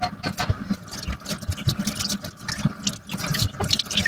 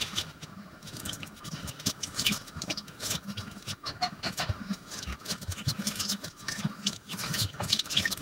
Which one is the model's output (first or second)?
second